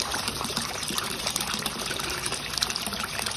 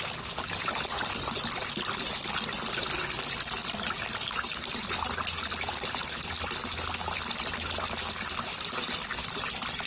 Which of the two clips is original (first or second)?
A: second